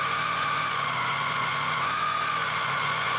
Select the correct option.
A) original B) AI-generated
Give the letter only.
B